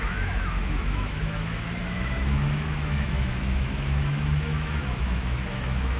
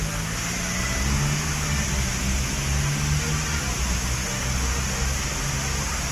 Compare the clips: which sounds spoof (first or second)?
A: first